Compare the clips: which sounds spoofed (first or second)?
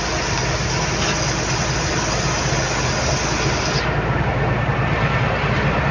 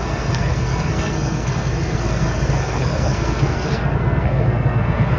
second